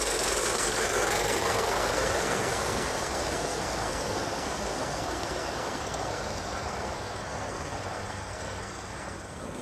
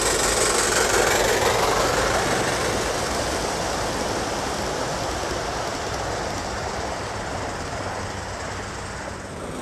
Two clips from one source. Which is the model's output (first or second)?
first